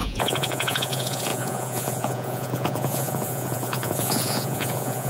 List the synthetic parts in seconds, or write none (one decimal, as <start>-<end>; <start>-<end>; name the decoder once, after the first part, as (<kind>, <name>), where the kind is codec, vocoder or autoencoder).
0.0-5.1 (vocoder, Vocos)